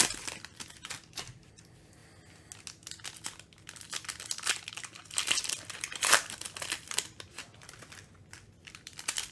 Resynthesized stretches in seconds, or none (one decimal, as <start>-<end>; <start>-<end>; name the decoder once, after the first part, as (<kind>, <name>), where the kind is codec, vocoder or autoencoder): 0.0-2.0 (vocoder, BigVGAN v2); 4.7-9.3